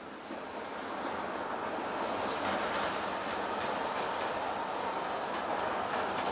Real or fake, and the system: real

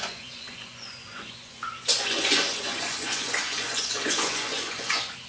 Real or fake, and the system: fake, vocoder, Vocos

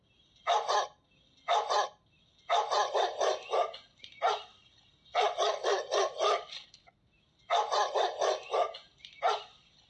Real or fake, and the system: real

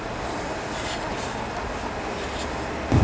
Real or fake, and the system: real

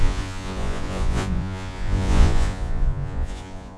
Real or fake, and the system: fake, vocoder, Vocos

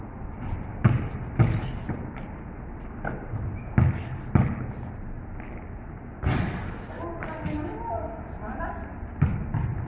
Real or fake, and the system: real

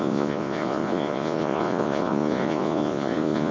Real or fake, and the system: fake, vocoder, Vocos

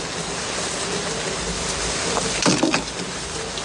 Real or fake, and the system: real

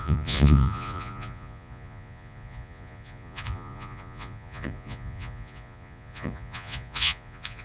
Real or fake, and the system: fake, vocoder, Vocos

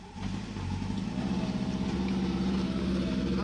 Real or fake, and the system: real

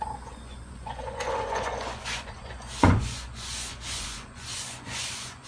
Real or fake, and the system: fake, vocoder, Vocos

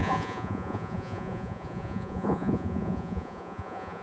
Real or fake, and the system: fake, vocoder, Vocos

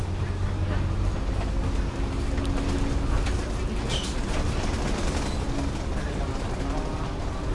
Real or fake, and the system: real